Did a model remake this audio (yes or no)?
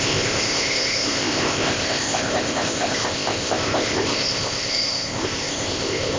yes